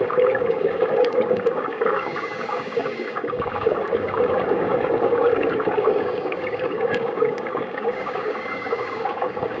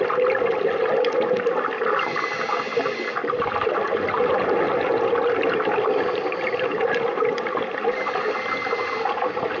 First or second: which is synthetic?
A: first